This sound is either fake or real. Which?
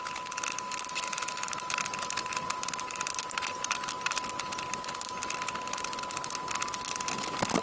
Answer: real